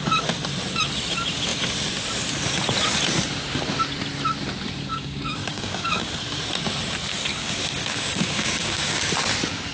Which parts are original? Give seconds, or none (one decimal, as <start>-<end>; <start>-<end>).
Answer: 0.0-4.9; 6.1-7.3; 9.0-9.7